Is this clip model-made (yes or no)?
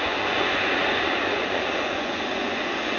yes